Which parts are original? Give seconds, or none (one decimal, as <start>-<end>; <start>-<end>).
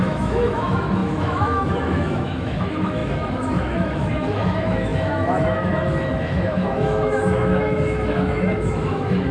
none